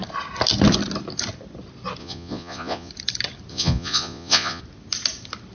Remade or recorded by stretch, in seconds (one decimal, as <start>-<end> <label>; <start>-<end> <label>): 0.0-2.0 recorded; 2.0-2.9 remade; 2.9-3.5 recorded; 3.5-4.6 remade; 4.6-5.5 recorded